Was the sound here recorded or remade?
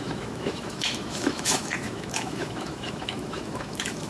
remade